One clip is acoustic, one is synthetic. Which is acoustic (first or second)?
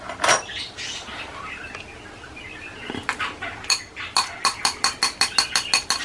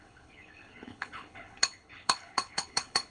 first